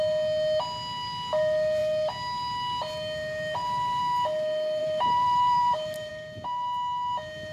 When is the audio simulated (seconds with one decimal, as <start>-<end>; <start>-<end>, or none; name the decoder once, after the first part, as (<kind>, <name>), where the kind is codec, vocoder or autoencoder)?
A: 4.8-6.1 (vocoder, BigVGAN v2)